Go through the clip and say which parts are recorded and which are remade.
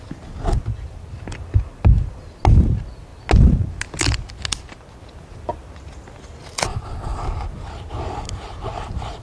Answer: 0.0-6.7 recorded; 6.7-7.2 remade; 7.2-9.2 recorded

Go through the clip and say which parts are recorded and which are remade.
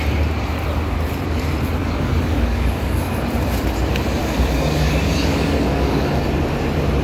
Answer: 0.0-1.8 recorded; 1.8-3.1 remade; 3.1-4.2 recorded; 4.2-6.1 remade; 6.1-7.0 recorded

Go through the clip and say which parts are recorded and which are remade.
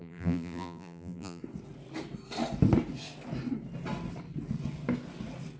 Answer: 0.0-1.4 remade; 1.4-5.6 recorded